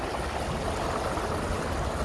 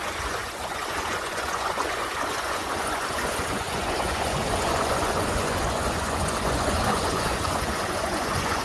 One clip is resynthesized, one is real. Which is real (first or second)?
first